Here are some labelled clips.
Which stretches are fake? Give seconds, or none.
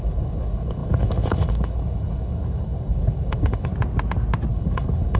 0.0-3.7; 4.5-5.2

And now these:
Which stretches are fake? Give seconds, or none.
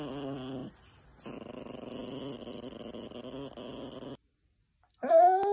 none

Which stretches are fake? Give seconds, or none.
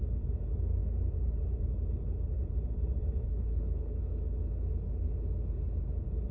3.2-4.0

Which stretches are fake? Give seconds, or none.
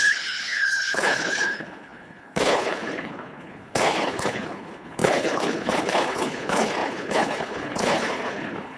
0.0-8.8